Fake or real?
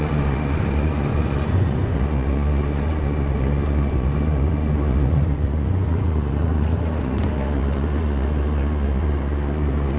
fake